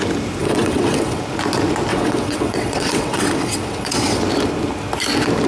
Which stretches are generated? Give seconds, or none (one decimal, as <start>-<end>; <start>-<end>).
0.4-1.2; 1.9-4.2